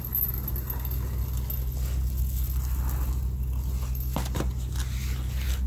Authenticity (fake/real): real